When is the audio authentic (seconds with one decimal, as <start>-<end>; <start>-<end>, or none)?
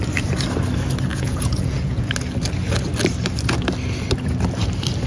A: 0.0-1.1; 2.1-5.1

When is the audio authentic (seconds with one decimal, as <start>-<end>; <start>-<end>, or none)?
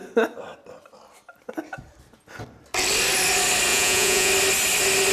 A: 0.0-3.7; 4.3-5.1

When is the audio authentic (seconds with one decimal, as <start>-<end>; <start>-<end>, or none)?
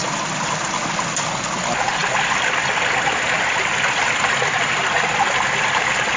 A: 0.0-6.2